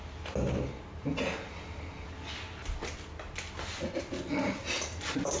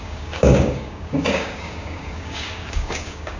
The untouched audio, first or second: first